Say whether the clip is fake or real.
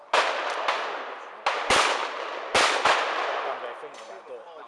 real